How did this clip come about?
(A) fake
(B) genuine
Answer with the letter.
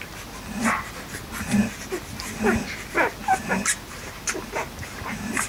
B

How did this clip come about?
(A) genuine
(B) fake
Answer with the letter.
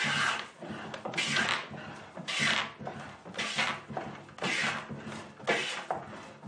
A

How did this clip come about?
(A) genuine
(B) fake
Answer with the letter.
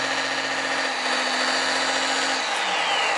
A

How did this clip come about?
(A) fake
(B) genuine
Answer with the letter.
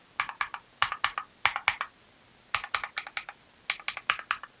B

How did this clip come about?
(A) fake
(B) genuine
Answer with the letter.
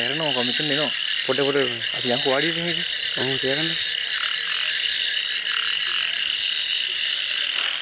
B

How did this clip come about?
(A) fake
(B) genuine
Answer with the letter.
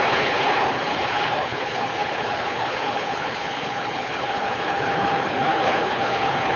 A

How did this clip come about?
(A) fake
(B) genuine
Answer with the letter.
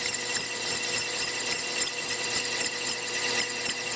B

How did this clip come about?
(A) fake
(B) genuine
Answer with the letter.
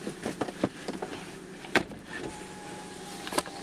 A